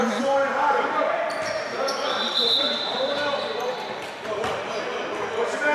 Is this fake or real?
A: fake